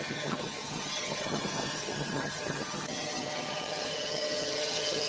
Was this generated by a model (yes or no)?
yes